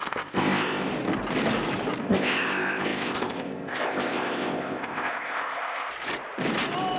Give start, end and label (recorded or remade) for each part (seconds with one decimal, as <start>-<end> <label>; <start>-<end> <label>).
0.0-0.9 remade; 0.9-2.0 recorded; 2.0-5.9 remade; 5.9-7.0 recorded